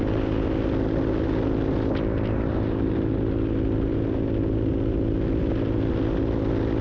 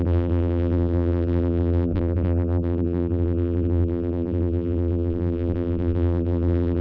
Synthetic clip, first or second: second